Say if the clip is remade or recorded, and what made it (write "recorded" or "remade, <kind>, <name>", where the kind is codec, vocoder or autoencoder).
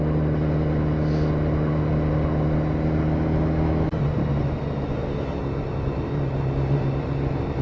recorded